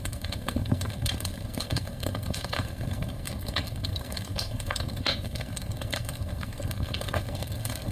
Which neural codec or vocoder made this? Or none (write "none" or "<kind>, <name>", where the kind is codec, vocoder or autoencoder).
codec, SNAC